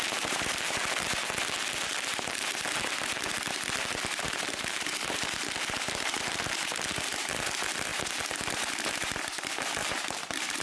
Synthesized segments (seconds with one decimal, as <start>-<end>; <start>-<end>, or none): 0.0-0.8; 4.0-10.6